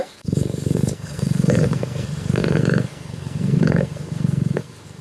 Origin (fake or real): fake